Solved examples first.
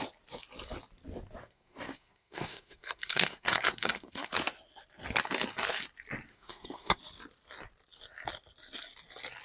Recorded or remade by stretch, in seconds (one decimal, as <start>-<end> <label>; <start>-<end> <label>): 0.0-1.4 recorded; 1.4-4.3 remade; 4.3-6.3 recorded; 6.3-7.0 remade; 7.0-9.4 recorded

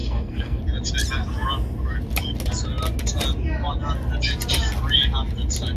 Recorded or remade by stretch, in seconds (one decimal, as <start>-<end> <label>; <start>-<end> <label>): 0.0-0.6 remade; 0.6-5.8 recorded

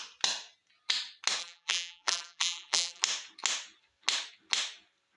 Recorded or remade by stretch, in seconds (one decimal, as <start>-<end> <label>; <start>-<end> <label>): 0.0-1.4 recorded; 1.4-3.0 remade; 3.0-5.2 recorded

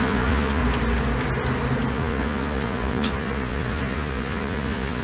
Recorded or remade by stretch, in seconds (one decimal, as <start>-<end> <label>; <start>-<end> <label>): 0.0-0.6 remade; 0.6-1.9 recorded; 1.9-5.0 remade

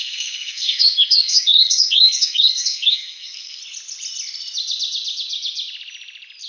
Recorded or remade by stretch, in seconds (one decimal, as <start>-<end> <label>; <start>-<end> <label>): 0.0-3.6 remade; 3.6-6.5 recorded

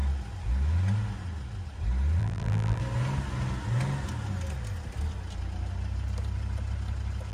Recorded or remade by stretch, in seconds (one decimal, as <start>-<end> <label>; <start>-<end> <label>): 0.0-2.2 recorded; 2.2-2.8 remade; 2.8-7.3 recorded

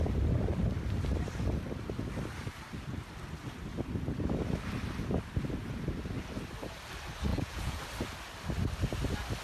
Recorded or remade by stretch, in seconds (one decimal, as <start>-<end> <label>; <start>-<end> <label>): 0.0-7.3 recorded; 7.3-7.8 remade; 7.8-9.4 recorded